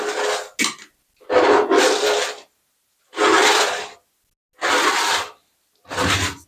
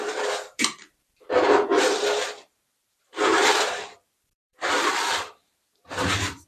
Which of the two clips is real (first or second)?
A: first